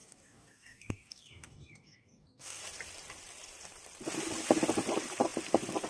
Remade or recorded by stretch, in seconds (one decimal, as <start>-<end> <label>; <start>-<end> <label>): 0.0-2.6 remade; 2.6-5.9 recorded